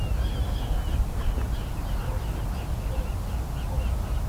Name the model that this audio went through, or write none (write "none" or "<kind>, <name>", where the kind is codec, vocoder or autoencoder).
none